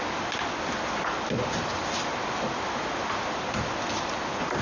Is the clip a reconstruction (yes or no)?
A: no